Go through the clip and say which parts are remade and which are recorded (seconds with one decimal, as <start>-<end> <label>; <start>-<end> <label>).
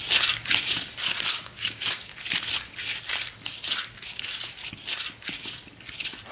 0.0-1.4 recorded; 1.4-2.1 remade; 2.1-6.3 recorded